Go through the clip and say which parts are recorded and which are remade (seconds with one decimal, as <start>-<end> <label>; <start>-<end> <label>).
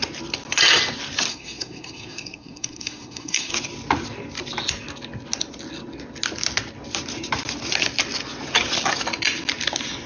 0.0-1.3 recorded; 1.3-3.5 remade; 3.5-10.1 recorded